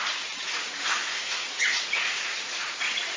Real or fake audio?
fake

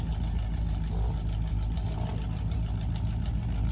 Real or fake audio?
real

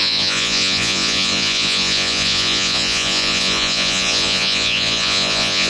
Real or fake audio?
fake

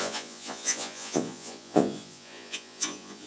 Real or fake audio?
fake